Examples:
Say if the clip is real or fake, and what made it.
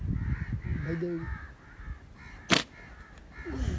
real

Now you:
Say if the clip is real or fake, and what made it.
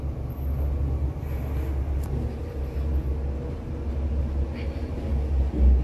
real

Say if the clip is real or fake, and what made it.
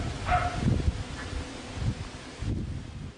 real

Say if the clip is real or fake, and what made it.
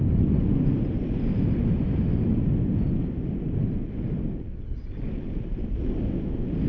real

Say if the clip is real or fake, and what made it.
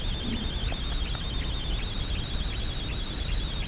real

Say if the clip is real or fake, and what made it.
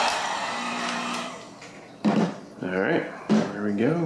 fake, vocoder, BigVGAN v2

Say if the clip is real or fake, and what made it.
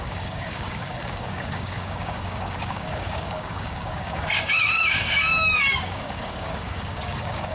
fake, codec, DAC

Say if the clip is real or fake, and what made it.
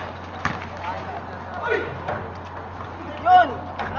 real